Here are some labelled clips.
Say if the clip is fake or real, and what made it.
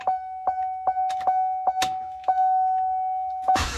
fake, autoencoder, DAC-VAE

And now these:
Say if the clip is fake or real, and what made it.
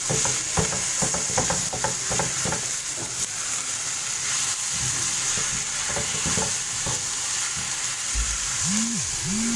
real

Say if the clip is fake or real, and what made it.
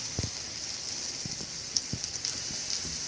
real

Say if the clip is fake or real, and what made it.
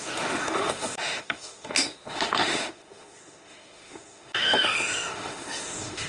fake, autoencoder, DAC-VAE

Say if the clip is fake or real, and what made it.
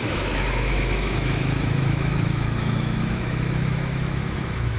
fake, autoencoder, DAC-VAE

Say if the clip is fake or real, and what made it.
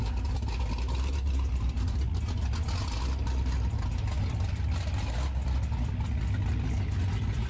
real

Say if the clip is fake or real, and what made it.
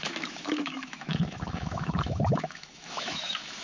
fake, autoencoder, DAC-VAE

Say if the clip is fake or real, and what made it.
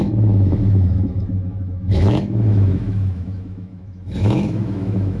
fake, autoencoder, DAC-VAE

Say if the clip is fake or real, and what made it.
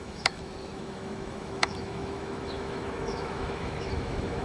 fake, autoencoder, DAC-VAE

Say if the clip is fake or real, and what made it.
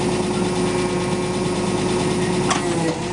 real